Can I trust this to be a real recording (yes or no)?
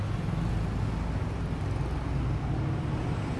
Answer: yes